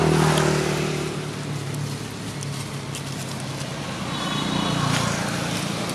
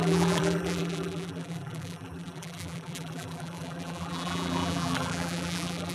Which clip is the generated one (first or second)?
second